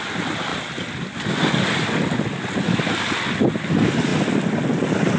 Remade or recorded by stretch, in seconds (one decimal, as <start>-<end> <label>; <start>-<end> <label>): 0.0-5.2 recorded